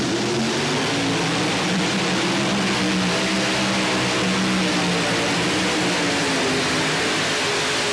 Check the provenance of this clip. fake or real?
real